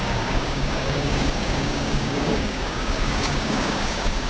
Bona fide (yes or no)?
no